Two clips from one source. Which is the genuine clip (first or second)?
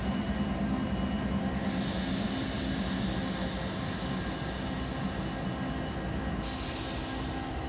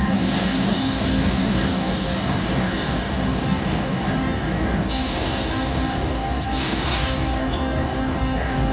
first